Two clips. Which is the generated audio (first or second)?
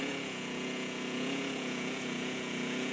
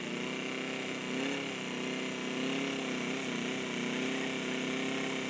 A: first